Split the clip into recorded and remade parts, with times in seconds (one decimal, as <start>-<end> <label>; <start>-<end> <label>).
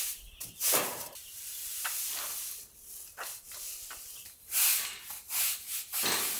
0.0-6.4 recorded